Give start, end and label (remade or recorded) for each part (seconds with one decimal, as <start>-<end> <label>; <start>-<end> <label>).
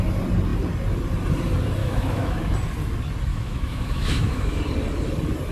0.0-1.8 recorded; 1.8-2.5 remade; 2.5-3.3 recorded; 3.3-4.6 remade; 4.6-5.5 recorded